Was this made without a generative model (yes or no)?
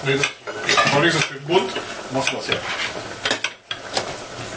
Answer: yes